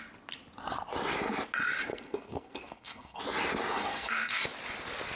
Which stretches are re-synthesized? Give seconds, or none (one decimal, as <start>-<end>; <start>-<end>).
1.9-3.2; 3.8-4.4